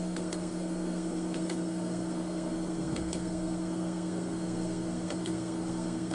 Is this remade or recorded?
remade